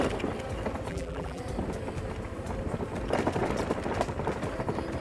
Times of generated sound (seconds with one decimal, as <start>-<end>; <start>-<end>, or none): 0.9-1.4